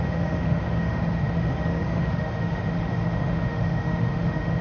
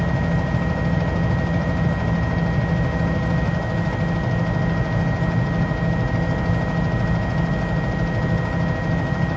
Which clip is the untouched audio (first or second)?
second